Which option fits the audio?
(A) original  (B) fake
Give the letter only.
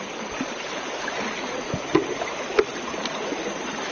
A